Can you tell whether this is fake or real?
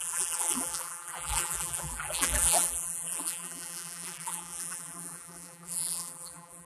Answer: fake